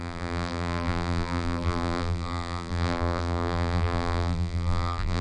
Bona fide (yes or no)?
no